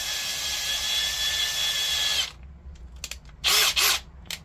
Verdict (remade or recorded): recorded